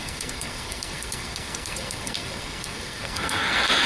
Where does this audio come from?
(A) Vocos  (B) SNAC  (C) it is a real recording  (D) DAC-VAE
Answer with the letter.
B